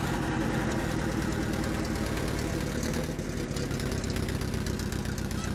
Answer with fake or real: real